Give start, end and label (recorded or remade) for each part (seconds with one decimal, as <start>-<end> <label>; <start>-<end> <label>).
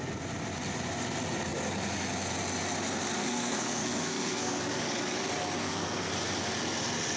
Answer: 0.0-3.2 recorded; 3.2-4.6 remade; 4.6-5.6 recorded; 5.6-6.1 remade; 6.1-7.2 recorded